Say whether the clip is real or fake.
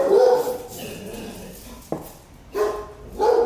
real